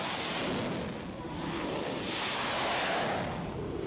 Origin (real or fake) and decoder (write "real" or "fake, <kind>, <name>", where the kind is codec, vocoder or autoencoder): real